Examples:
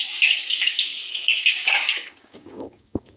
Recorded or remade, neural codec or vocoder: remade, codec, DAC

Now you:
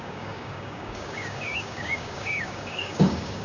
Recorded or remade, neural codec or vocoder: remade, codec, DAC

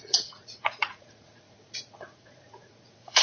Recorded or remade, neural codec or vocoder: remade, vocoder, Vocos